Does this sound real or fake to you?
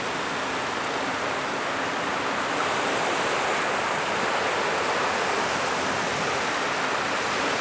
real